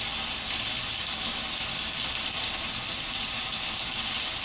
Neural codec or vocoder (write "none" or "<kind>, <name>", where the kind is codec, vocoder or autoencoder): none